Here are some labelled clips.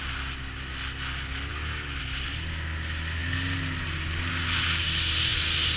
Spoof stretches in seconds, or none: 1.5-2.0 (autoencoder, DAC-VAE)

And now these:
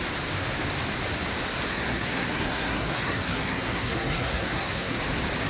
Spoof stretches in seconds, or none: 1.7-5.0 (codec, SNAC)

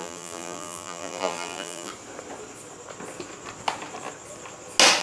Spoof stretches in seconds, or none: 0.0-1.9 (vocoder, BigVGAN v2)

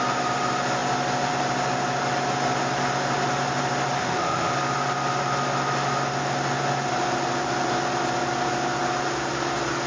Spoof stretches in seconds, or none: 4.0-4.5 (autoencoder, DAC-VAE)

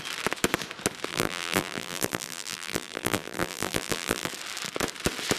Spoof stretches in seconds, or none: 1.1-4.3 (vocoder, BigVGAN v2)

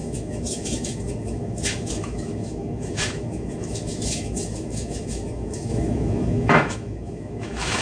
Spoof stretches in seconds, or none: 0.0-7.8 (autoencoder, DAC-VAE)